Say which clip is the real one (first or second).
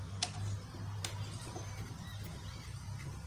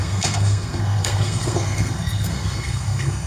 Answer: first